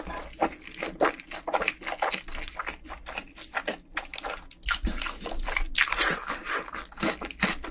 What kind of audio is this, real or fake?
real